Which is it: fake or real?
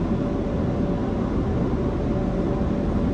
real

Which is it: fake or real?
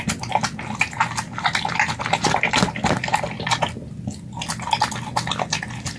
real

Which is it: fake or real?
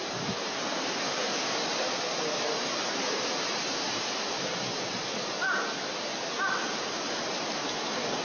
real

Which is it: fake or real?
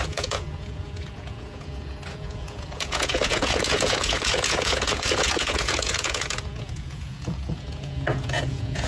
fake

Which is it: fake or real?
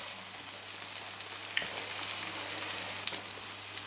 real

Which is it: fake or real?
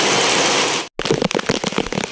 real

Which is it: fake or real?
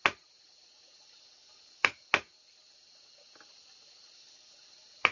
real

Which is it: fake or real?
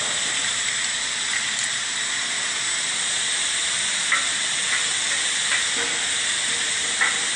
fake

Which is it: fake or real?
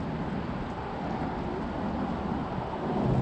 real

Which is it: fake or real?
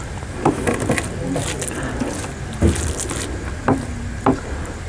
real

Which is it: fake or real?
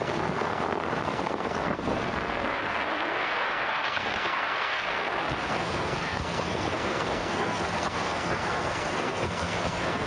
fake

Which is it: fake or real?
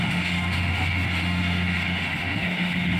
fake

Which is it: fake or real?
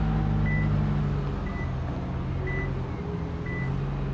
real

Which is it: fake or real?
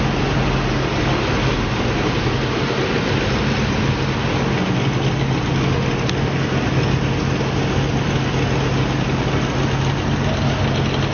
real